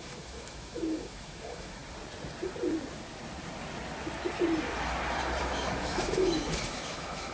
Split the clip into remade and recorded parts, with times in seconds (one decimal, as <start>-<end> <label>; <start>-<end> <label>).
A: 0.0-1.8 remade; 1.8-5.4 recorded; 5.4-7.3 remade